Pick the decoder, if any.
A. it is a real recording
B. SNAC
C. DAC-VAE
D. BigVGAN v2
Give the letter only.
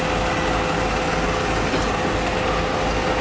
A